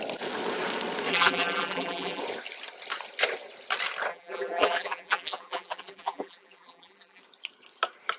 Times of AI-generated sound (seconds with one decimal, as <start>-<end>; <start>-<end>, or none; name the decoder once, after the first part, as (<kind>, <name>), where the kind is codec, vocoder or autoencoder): 1.1-2.2 (vocoder, BigVGAN v2); 4.1-7.2